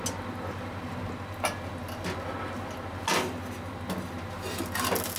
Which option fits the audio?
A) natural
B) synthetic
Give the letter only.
A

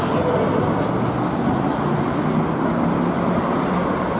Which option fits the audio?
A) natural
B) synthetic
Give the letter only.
A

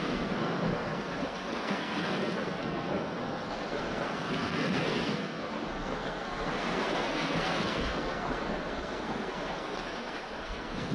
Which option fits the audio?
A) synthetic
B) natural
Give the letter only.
A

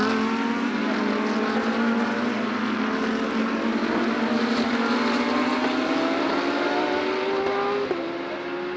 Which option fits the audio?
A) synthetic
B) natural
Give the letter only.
B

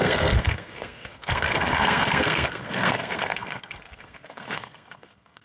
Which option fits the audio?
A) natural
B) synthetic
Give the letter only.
B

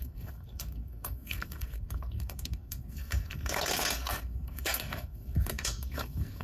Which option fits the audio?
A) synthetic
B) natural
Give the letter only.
A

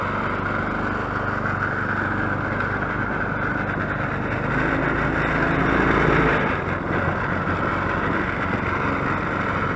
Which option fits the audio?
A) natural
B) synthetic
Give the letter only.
A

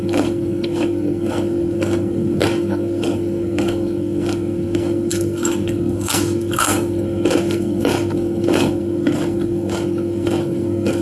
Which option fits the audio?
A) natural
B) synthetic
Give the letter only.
B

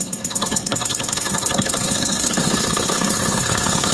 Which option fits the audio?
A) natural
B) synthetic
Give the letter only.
B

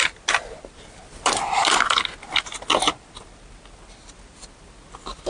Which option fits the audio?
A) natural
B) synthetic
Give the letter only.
A